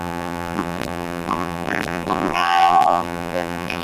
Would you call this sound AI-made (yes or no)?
yes